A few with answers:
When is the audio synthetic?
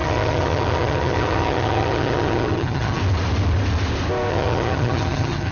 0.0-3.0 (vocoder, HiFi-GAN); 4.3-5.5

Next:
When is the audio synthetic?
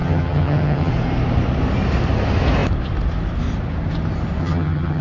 0.0-0.9 (vocoder, HiFi-GAN); 4.4-5.0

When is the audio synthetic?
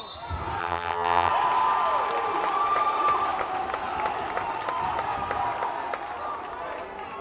0.6-1.3 (vocoder, HiFi-GAN)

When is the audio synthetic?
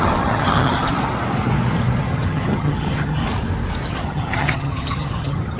0.0-0.9 (vocoder, HiFi-GAN); 2.0-3.2; 3.9-5.6